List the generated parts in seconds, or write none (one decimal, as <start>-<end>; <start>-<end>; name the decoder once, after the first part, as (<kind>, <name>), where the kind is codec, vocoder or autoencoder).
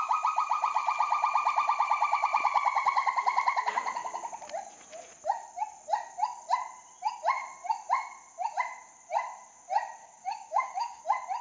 10.0-11.0 (codec, DAC)